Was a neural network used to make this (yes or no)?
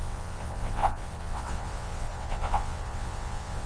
yes